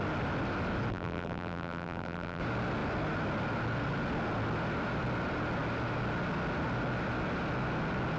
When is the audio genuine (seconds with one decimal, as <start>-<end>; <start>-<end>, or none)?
0.0-0.9; 2.4-8.2